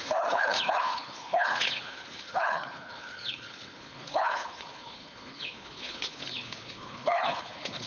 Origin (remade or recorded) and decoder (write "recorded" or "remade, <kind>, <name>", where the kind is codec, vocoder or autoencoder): remade, codec, HILCodec